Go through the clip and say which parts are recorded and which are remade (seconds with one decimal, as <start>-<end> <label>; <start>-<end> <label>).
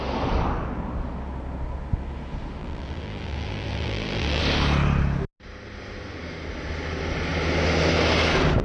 0.0-2.6 recorded; 2.6-4.4 remade; 4.4-8.6 recorded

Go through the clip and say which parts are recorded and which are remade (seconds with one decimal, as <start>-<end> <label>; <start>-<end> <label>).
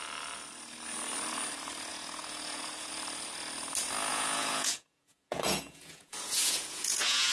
0.0-1.9 recorded; 1.9-2.9 remade; 2.9-4.1 recorded; 4.1-7.3 remade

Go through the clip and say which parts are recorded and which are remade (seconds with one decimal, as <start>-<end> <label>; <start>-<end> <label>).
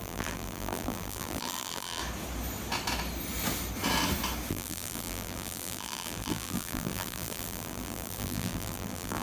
0.0-2.0 remade; 2.0-4.5 recorded; 4.5-9.2 remade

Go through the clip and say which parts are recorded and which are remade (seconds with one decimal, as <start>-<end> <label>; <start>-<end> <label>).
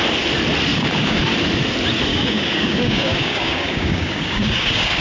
0.0-0.7 recorded; 0.7-1.2 remade; 1.2-2.1 recorded; 2.1-5.0 remade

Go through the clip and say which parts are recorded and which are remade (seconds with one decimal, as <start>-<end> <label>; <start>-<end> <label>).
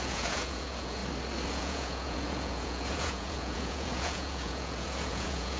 0.0-1.0 remade; 1.0-1.5 recorded; 1.5-5.6 remade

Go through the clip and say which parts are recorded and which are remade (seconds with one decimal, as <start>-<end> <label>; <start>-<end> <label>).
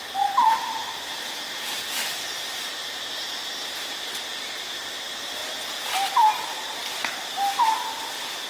0.0-8.5 recorded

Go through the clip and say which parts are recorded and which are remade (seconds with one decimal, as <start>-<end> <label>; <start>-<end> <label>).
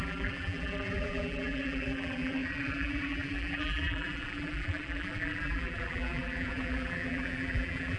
0.0-8.0 remade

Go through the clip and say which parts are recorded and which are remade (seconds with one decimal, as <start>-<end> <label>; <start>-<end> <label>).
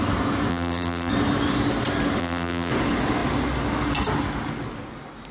0.0-0.5 recorded; 0.5-1.1 remade; 1.1-2.2 recorded; 2.2-2.7 remade; 2.7-5.3 recorded